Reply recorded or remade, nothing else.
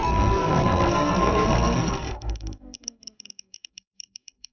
remade